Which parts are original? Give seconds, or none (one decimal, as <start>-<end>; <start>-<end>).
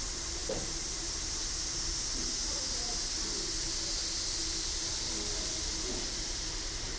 0.0-7.0